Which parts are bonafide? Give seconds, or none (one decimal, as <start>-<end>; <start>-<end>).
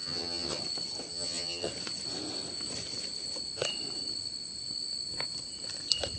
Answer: 0.6-1.1; 1.7-6.2